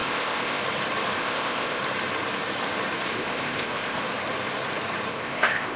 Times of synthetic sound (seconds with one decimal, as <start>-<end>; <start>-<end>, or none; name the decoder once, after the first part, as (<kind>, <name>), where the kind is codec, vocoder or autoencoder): 0.0-0.6 (codec, ZipCodec); 1.2-1.8; 3.1-4.0; 5.1-5.8

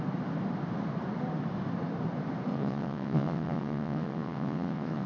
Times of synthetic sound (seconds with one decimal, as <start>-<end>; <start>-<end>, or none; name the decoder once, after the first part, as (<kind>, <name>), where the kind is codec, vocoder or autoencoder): 2.5-5.1 (vocoder, WaveNeXt)

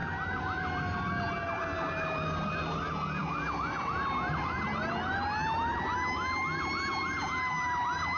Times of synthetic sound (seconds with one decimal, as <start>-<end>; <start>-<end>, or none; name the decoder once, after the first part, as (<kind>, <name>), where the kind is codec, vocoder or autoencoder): none

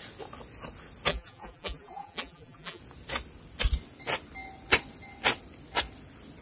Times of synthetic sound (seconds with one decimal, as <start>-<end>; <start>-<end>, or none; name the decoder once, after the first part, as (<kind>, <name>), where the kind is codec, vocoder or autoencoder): 1.1-2.8 (vocoder, BigVGAN v2)